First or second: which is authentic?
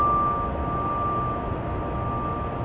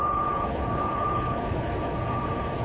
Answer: first